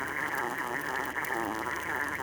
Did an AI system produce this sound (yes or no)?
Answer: no